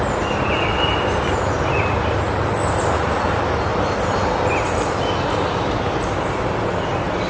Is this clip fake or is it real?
real